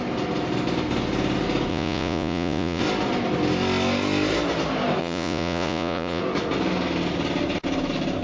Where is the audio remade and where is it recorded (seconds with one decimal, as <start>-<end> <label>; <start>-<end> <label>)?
0.0-1.7 recorded; 1.7-2.8 remade; 2.8-5.0 recorded; 5.0-6.2 remade; 6.2-8.2 recorded